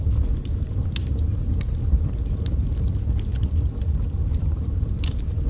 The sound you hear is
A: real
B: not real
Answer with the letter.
B